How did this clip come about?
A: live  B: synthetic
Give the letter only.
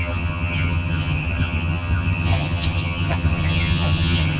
B